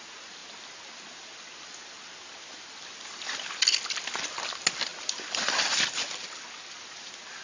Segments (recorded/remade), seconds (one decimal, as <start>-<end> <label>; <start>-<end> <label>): 0.0-7.4 recorded